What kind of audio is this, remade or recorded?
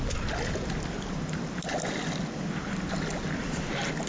recorded